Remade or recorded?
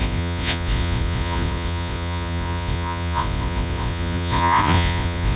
remade